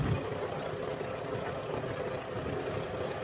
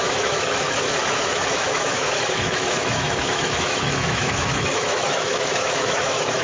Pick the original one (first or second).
first